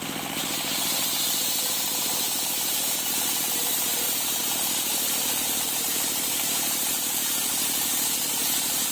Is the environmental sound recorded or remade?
recorded